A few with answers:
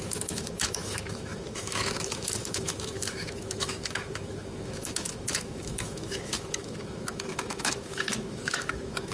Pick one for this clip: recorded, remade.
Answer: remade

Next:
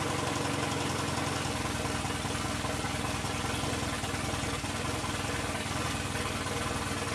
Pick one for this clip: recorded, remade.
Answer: recorded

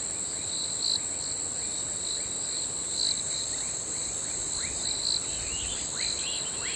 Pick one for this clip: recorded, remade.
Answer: recorded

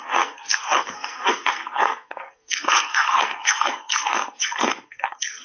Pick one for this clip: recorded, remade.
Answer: remade